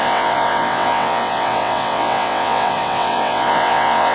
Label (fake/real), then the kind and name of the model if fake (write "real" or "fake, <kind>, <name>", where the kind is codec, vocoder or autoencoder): fake, vocoder, WaveNeXt